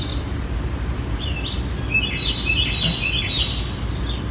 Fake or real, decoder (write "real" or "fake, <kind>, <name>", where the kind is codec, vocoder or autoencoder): real